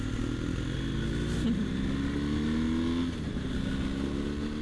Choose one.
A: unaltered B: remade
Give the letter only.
A